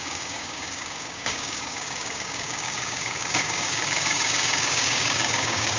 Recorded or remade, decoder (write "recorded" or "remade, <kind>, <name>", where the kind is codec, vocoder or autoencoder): remade, codec, DAC